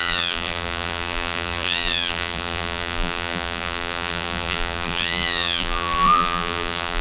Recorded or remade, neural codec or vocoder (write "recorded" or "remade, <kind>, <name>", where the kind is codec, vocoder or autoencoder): remade, vocoder, BigVGAN v2